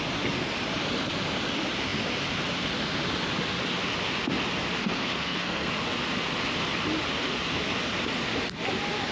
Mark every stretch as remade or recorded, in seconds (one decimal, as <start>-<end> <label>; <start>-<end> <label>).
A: 0.0-4.8 recorded; 4.8-5.7 remade; 5.7-9.1 recorded